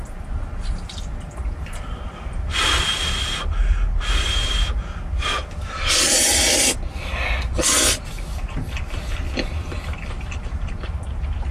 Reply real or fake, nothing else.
real